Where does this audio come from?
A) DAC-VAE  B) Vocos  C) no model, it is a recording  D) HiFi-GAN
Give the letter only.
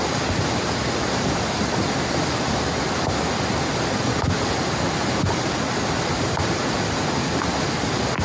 C